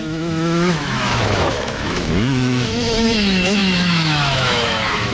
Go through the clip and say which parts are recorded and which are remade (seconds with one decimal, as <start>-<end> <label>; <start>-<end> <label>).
0.0-5.1 remade